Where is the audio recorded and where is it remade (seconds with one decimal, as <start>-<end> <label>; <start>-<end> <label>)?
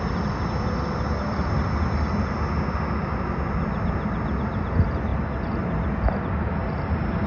0.0-7.3 recorded